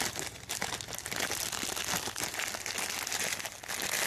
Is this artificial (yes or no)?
no